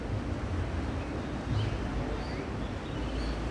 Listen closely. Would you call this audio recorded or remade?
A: recorded